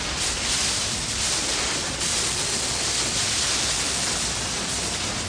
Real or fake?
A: real